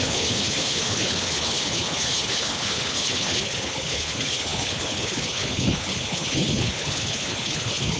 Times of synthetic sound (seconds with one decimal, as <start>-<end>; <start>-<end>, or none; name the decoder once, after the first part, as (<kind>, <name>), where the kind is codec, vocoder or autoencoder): 0.0-8.0 (codec, HILCodec)